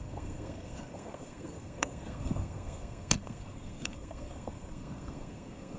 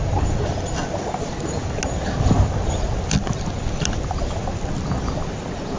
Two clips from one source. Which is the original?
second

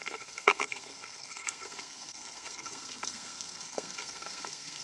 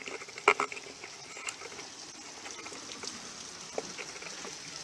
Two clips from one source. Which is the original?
second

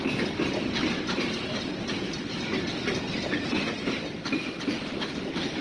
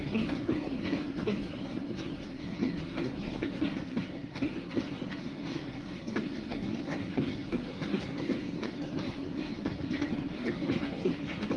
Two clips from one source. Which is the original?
first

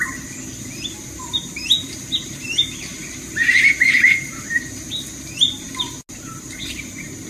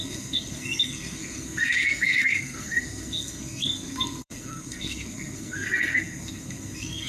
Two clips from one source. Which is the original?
first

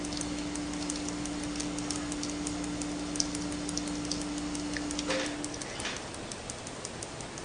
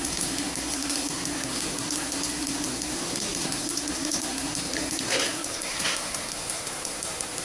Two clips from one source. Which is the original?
first